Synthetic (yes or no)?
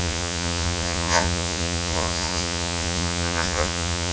yes